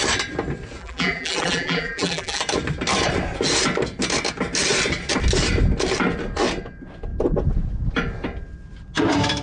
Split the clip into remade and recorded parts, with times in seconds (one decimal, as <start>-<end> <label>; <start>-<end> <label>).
0.0-0.8 recorded; 0.8-2.4 remade; 2.4-9.4 recorded